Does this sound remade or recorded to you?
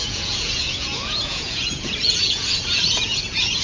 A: remade